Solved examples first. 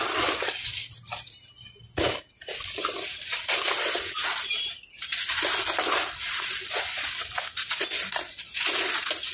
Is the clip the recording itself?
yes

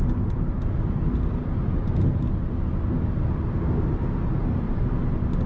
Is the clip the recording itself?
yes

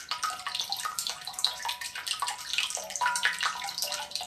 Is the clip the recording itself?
no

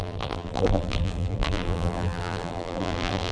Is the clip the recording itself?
no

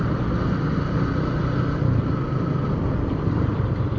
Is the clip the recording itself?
no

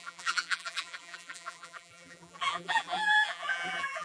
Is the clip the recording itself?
no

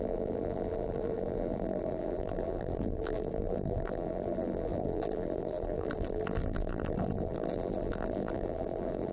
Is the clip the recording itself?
no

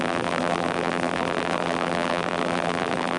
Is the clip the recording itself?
no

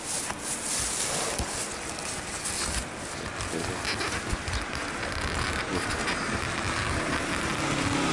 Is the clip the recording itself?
yes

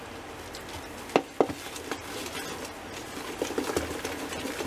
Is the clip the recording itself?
yes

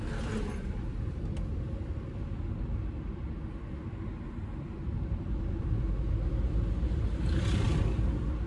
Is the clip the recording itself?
no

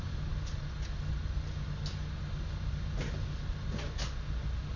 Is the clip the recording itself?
yes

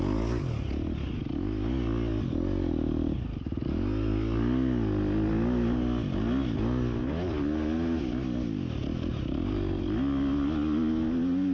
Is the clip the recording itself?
yes